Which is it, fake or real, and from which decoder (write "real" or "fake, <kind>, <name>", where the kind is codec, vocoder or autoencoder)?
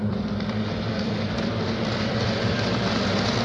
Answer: fake, vocoder, BigVGAN v2